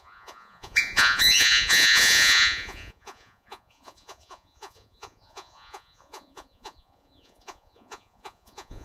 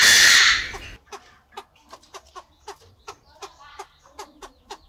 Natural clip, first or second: second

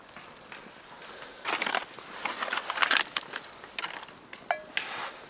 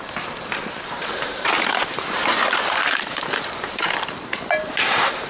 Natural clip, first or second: first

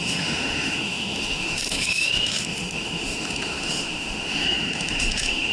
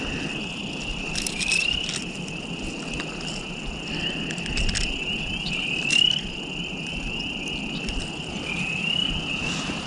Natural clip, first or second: second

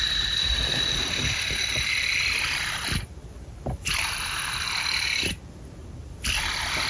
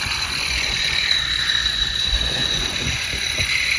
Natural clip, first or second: first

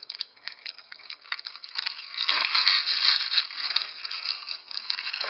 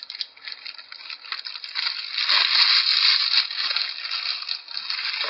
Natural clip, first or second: second